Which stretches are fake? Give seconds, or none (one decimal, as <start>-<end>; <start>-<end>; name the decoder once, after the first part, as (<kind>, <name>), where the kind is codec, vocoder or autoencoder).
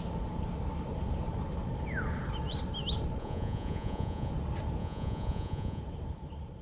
3.2-4.3 (vocoder, Vocos); 4.8-5.8